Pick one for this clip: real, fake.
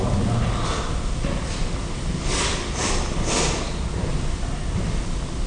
real